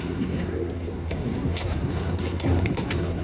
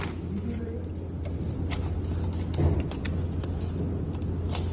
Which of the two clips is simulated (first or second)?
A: first